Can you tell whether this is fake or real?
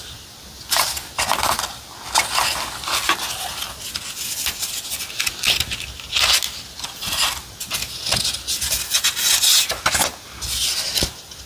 real